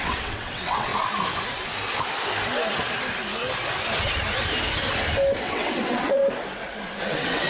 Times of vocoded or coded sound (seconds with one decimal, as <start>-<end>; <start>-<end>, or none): 0.0-0.9; 5.4-6.2; 7.0-7.5